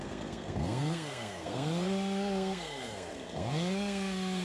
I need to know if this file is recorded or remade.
remade